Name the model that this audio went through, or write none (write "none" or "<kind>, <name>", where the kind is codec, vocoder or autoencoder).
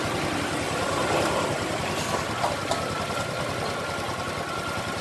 none